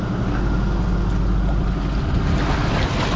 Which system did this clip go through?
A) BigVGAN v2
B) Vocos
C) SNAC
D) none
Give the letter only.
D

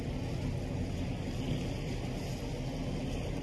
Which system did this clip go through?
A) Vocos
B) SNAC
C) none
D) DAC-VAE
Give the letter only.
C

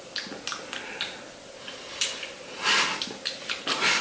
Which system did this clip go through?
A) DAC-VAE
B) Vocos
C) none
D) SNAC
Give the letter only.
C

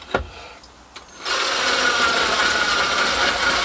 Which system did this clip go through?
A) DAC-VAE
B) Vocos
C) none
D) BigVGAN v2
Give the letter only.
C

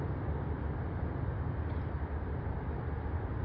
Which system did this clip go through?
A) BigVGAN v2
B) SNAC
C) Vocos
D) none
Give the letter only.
D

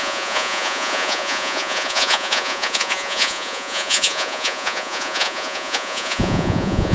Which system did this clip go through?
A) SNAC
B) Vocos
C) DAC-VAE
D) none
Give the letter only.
B